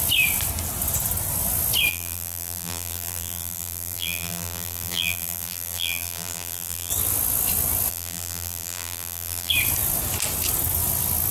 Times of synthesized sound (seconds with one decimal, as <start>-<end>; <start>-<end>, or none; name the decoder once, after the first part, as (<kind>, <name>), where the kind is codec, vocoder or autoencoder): 1.9-6.9 (vocoder, BigVGAN v2); 7.9-9.5